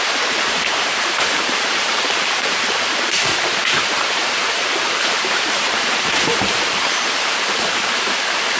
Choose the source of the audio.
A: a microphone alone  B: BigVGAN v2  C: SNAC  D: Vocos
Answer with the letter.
B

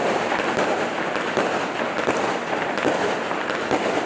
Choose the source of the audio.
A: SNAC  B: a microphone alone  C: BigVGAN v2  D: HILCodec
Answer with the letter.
C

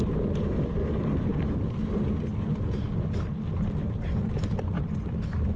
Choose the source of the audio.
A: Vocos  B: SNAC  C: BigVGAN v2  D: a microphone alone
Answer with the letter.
D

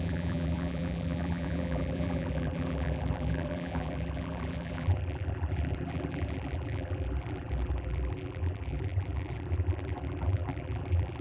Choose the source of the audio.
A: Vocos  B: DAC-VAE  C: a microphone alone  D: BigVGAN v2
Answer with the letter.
D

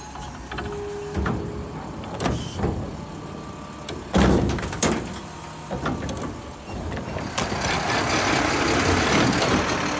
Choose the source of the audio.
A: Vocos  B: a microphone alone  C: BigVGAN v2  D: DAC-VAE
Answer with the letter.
B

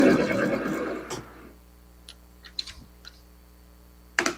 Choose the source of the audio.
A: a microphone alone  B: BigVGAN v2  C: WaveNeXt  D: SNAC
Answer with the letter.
B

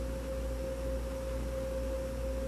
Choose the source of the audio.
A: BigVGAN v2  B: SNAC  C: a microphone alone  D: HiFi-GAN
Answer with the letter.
C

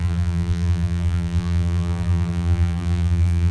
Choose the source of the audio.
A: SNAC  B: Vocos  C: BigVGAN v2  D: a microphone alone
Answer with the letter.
C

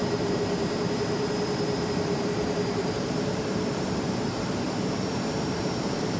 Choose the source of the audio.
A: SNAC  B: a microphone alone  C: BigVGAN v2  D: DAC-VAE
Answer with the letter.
C